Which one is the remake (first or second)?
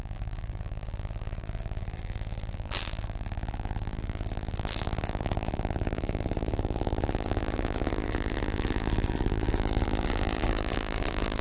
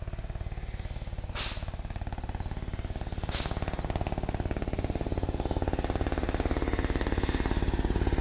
first